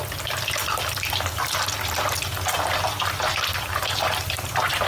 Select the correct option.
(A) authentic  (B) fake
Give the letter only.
A